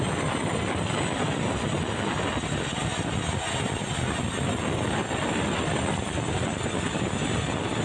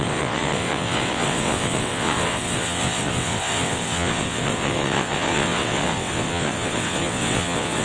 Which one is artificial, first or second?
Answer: second